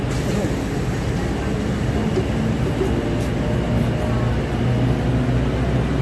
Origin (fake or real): real